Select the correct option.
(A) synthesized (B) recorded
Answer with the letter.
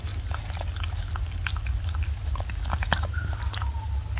B